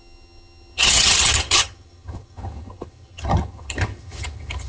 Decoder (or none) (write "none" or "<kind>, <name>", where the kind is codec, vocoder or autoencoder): vocoder, HiFi-GAN